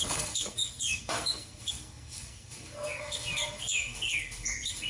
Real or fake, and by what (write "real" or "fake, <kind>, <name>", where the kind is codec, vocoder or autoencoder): fake, codec, SNAC